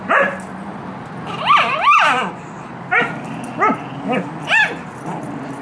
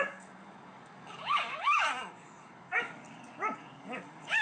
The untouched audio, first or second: first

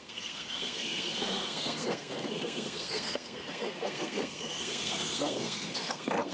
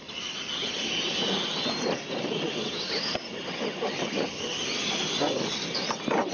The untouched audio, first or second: second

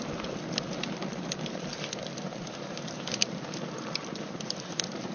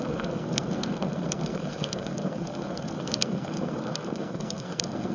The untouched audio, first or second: first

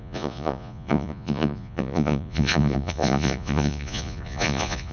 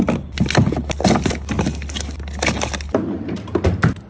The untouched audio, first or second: second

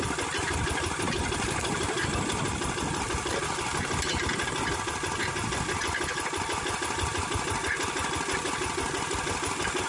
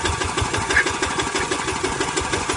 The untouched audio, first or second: first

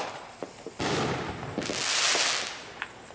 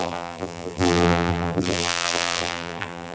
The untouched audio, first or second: first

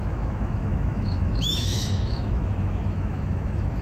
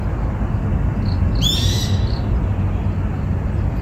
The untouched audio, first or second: second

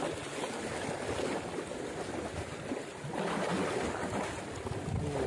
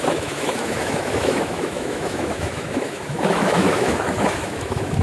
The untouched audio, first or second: first